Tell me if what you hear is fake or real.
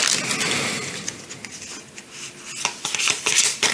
real